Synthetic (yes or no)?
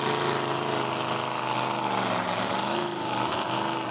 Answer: no